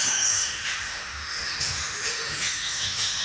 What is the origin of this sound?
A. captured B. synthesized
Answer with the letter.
B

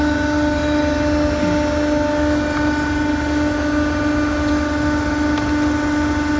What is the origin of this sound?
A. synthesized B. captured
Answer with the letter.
B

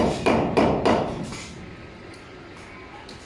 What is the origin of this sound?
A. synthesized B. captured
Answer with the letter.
B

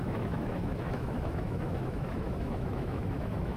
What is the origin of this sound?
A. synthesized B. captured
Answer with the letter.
A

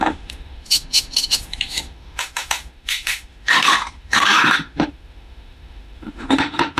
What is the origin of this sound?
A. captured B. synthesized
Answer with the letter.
B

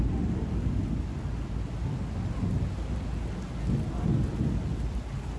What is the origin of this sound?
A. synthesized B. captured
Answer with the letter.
B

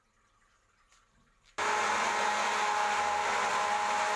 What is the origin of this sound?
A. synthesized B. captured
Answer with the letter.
B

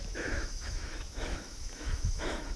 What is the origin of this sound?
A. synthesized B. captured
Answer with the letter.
A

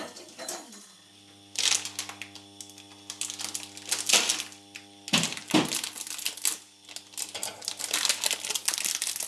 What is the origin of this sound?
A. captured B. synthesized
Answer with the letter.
A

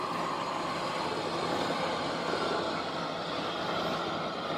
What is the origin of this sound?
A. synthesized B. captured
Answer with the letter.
B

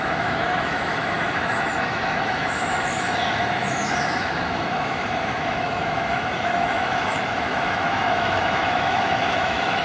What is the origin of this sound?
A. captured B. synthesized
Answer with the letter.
B